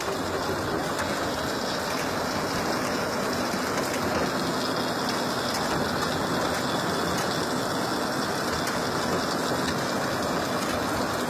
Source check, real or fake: real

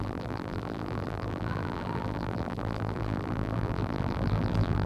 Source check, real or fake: fake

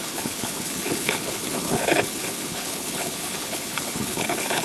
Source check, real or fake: fake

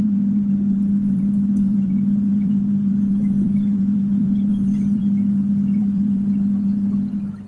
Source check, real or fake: fake